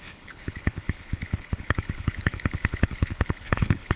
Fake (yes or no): yes